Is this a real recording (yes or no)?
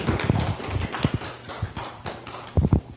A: yes